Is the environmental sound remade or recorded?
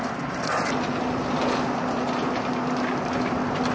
recorded